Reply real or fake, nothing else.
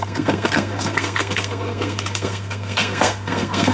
fake